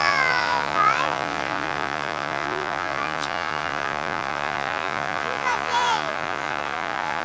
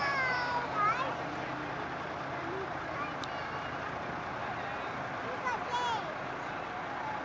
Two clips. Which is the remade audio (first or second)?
first